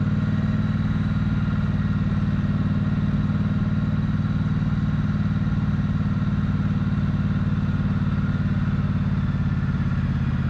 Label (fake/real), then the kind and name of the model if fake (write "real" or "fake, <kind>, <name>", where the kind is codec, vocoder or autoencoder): real